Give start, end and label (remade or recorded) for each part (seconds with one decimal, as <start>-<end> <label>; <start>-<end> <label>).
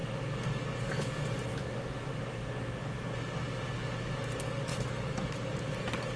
0.0-1.5 recorded; 1.5-2.1 remade; 2.1-4.7 recorded; 4.7-5.5 remade; 5.5-6.2 recorded